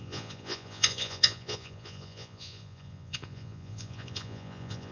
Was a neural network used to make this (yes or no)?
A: yes